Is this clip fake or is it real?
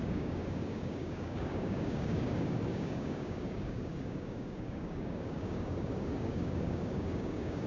fake